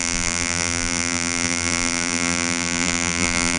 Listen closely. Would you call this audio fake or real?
fake